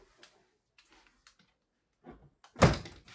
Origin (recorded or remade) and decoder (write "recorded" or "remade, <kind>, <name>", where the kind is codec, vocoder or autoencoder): recorded